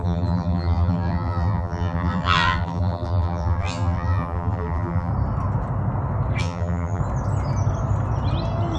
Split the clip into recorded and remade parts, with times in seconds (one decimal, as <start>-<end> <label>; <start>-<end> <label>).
0.0-5.1 remade; 5.1-6.4 recorded; 6.4-7.0 remade; 7.0-8.8 recorded